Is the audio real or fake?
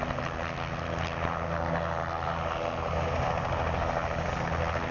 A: real